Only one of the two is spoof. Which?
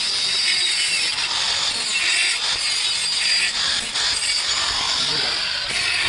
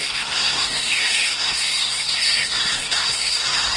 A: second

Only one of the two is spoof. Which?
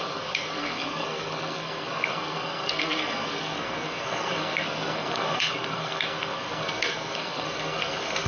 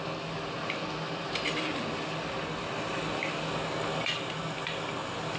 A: first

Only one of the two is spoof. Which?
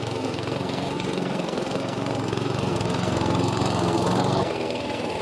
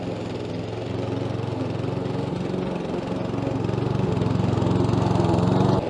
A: first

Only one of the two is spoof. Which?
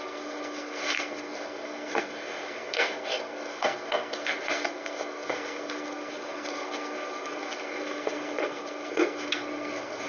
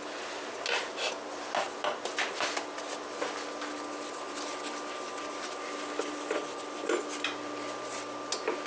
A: first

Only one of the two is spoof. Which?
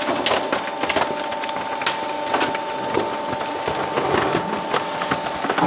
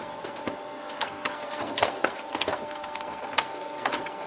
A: second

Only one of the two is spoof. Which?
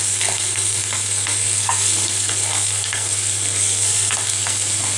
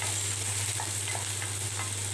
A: first